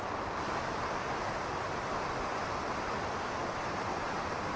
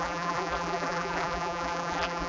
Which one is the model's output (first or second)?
second